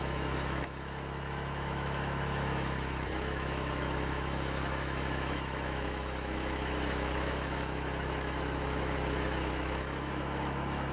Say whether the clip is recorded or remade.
remade